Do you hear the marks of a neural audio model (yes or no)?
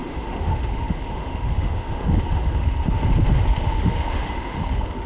yes